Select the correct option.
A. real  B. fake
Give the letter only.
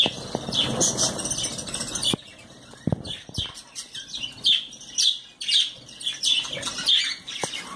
A